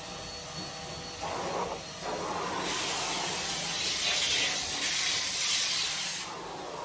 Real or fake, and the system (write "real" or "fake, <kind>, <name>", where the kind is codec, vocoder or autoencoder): real